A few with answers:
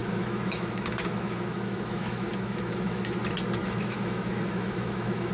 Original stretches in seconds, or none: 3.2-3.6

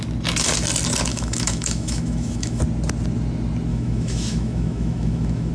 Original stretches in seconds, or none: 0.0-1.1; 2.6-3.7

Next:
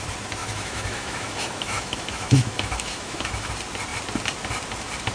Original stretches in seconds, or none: 0.0-0.4; 3.5-5.1

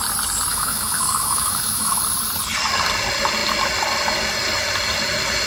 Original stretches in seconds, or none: 0.0-0.5; 2.0-5.5